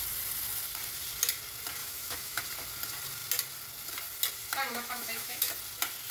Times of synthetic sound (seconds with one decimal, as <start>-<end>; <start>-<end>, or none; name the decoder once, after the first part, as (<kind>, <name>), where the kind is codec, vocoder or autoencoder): 1.8-2.4 (autoencoder, DAC-VAE); 4.7-5.5